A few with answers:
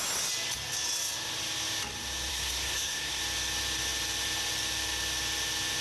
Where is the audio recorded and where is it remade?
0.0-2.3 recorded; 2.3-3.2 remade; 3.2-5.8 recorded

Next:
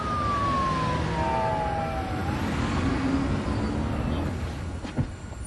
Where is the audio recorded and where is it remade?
0.0-2.2 recorded; 2.2-5.5 remade

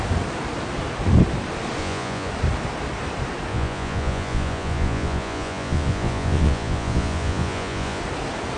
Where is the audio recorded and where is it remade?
0.0-1.8 recorded; 1.8-2.3 remade; 2.3-3.5 recorded; 3.5-8.0 remade; 8.0-8.6 recorded

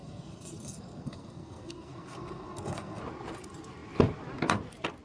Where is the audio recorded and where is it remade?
0.0-3.0 remade; 3.0-5.0 recorded

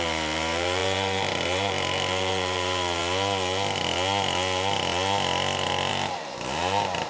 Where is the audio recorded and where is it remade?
0.0-3.0 remade; 3.0-5.9 recorded; 5.9-7.1 remade

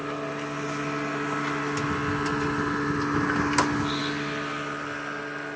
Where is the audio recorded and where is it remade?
0.0-5.6 recorded